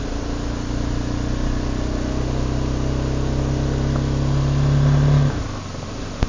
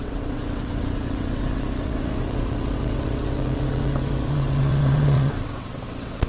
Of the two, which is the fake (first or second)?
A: second